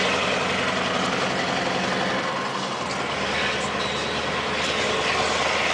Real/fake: real